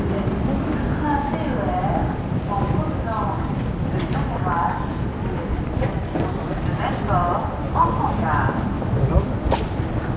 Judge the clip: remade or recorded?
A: recorded